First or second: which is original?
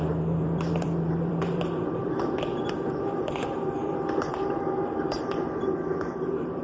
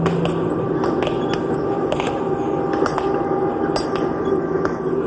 second